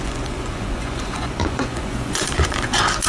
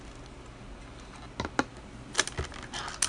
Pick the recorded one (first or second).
second